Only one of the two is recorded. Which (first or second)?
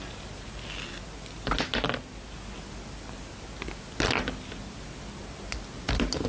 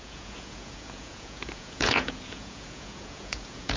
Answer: first